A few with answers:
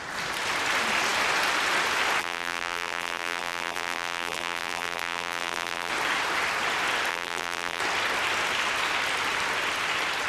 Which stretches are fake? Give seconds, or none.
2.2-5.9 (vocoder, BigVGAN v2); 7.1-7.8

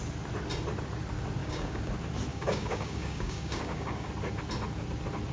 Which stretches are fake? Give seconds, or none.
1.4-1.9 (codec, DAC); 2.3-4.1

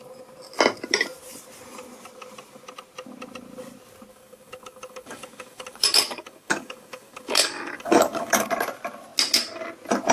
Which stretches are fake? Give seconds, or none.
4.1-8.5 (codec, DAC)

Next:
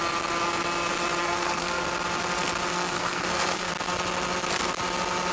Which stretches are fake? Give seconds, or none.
1.2-1.8 (codec, SNAC); 2.7-3.7